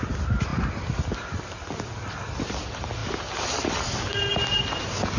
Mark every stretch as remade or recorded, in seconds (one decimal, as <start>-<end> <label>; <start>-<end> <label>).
0.0-5.2 recorded